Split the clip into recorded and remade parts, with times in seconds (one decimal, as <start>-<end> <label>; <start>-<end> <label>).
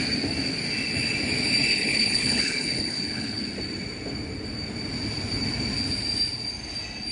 0.0-1.7 recorded; 1.7-3.4 remade; 3.4-7.1 recorded